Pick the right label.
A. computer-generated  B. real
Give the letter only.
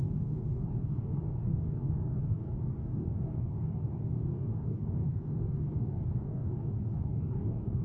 A